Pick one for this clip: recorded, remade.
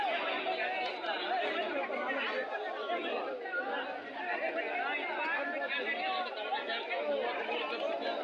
recorded